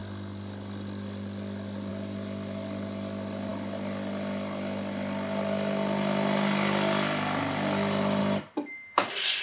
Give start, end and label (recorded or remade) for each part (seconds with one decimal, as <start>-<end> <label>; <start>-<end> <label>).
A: 0.0-9.4 recorded